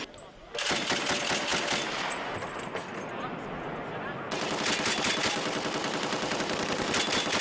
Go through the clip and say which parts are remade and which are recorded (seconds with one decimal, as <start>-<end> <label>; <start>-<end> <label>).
0.0-5.8 recorded; 5.8-6.4 remade; 6.4-7.4 recorded